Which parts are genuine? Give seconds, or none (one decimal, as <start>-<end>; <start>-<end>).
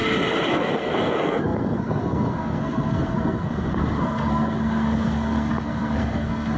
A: 0.0-0.5